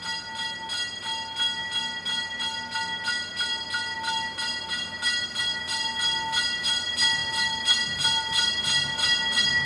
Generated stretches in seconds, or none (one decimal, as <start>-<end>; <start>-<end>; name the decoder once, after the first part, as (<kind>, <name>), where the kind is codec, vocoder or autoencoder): none